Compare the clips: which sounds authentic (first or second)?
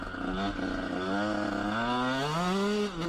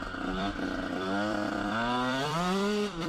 first